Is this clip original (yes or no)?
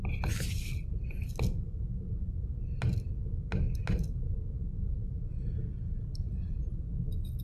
yes